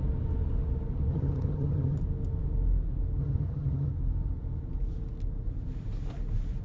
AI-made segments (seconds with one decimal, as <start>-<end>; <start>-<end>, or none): 1.1-2.0; 3.2-3.9